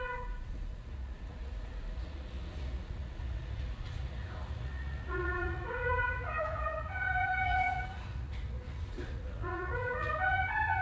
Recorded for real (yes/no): no